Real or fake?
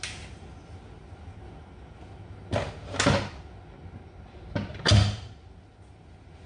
real